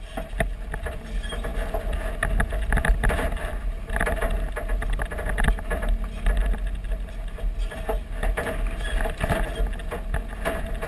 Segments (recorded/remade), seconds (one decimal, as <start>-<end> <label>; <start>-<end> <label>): 0.0-10.9 recorded